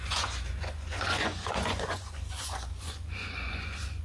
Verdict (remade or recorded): remade